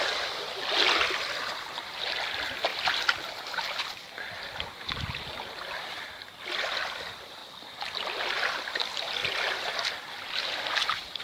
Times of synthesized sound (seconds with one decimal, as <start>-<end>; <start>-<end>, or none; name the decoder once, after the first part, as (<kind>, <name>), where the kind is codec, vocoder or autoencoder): none

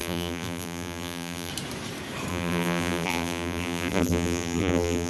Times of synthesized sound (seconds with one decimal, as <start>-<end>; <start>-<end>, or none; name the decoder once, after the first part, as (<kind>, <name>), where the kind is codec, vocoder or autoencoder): 0.0-1.5 (vocoder, BigVGAN v2); 2.3-5.1

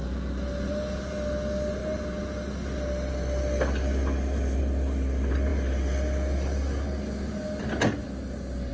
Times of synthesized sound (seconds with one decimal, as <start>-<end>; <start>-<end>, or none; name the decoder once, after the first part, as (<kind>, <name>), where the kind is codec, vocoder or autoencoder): none

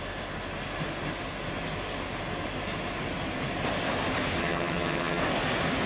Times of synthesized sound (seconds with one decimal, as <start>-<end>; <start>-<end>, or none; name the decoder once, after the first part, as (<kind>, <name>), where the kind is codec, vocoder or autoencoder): 4.4-5.2 (vocoder, HiFi-GAN)

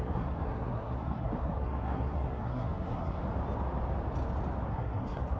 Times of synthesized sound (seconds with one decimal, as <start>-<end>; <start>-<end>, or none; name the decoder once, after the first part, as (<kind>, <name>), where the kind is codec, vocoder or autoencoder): 0.0-3.2 (codec, SNAC); 4.7-5.4

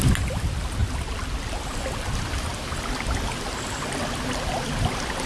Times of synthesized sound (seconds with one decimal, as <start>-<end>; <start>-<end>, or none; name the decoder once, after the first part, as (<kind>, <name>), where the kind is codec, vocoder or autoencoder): none

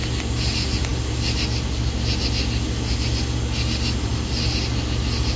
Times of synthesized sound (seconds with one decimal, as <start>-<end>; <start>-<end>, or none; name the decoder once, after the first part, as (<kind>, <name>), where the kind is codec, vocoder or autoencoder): none

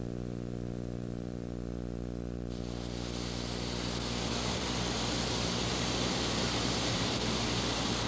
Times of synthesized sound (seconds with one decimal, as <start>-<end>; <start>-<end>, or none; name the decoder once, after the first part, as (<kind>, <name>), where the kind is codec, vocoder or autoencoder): 0.0-2.6 (vocoder, BigVGAN v2); 4.5-8.1